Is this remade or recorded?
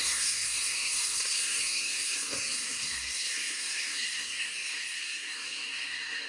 remade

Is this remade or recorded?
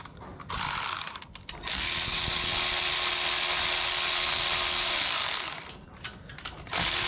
recorded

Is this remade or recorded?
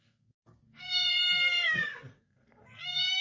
remade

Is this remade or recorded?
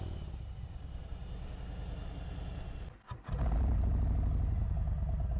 recorded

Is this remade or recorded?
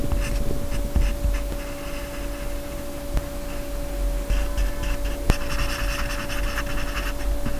recorded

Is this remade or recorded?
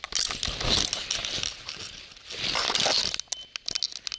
recorded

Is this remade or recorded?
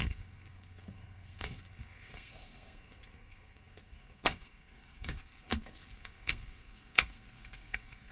remade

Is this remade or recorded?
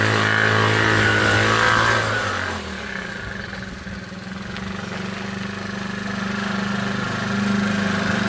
recorded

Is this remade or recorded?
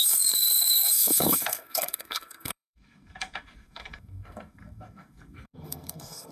remade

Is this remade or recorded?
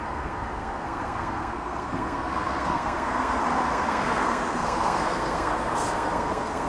remade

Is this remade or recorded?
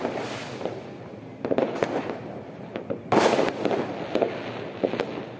recorded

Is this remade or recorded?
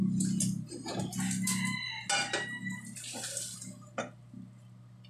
recorded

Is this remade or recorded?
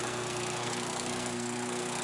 remade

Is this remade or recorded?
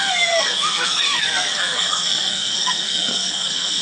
remade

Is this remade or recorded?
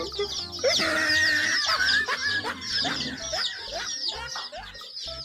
recorded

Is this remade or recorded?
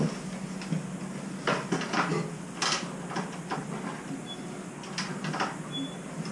recorded